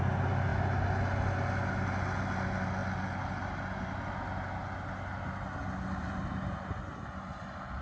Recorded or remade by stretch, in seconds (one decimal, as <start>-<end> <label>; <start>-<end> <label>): 0.0-7.8 recorded